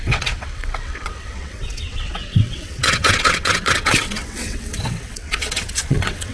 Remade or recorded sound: remade